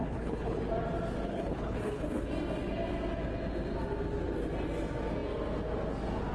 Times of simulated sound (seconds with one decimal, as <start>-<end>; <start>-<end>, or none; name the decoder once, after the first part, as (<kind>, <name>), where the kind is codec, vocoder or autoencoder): 0.0-0.6 (codec, HILCodec); 1.3-2.3